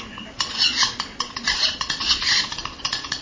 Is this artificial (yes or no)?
yes